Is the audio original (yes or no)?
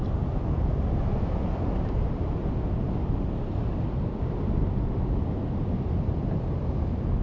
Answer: yes